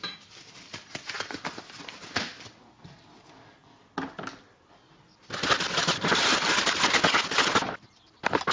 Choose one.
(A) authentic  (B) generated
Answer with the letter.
A